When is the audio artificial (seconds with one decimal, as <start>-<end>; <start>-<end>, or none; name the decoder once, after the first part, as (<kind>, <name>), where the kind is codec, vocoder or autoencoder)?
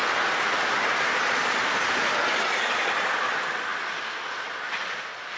none